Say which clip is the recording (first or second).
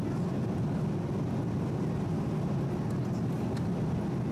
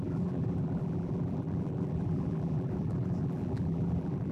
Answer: first